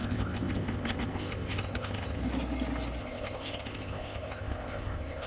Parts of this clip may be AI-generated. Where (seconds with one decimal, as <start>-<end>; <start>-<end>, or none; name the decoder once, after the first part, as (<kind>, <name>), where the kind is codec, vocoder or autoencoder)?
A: 0.0-2.2 (codec, ZipCodec); 3.0-5.3